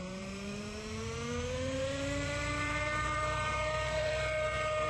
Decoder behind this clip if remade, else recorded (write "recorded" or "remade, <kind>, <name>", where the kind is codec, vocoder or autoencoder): remade, vocoder, BigVGAN v2